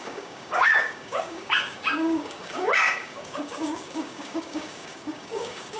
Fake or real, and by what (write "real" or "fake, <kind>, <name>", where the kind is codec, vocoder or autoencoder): fake, codec, DAC